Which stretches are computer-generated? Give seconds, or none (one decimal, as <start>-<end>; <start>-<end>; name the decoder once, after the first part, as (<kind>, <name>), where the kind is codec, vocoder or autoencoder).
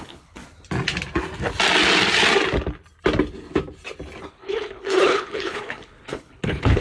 0.0-0.4 (codec, HILCodec); 4.3-6.8